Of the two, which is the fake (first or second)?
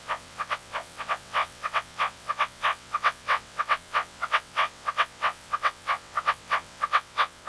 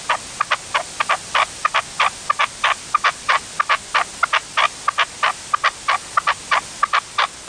first